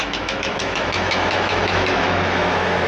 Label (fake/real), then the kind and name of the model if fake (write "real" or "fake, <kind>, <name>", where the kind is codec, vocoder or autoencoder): fake, autoencoder, DAC-VAE